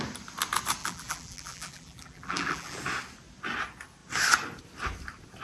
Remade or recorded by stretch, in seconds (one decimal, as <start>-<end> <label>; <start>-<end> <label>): 0.0-0.8 recorded; 0.8-2.8 remade; 2.8-5.4 recorded